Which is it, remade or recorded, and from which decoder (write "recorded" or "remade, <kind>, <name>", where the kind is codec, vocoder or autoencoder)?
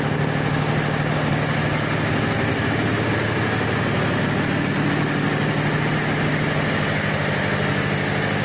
recorded